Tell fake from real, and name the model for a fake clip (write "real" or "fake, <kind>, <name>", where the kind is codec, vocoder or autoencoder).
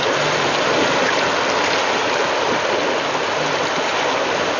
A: real